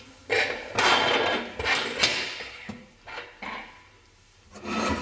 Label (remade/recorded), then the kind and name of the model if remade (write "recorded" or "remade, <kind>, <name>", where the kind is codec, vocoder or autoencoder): recorded